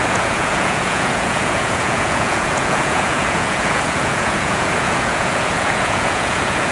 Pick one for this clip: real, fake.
fake